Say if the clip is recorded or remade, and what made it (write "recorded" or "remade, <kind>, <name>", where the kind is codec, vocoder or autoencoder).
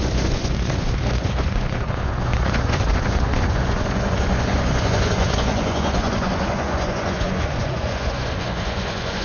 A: remade, vocoder, Vocos